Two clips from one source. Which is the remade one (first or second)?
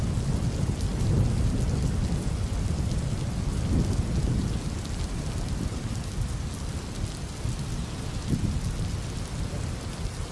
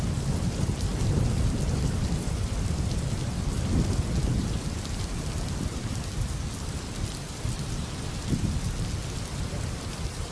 second